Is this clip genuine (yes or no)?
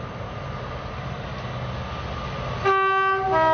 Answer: yes